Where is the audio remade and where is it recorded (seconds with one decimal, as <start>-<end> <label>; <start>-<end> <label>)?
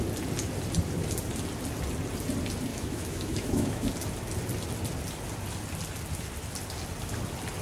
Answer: 0.0-2.7 recorded; 2.7-3.9 remade; 3.9-7.6 recorded